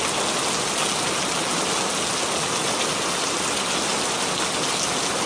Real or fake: real